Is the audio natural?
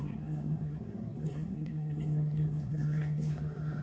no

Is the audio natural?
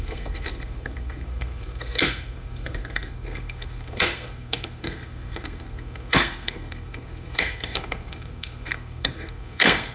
no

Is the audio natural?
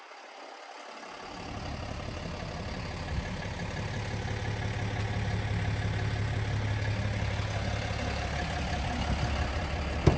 yes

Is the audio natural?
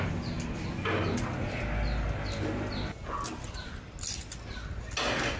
yes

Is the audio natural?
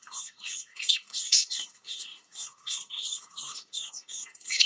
no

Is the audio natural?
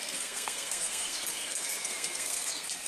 no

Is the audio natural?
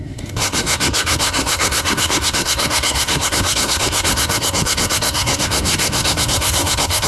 no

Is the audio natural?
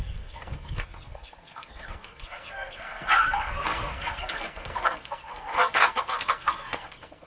no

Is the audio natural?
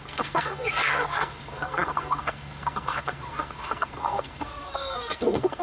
no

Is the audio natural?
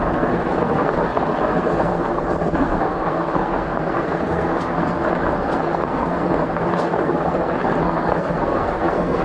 no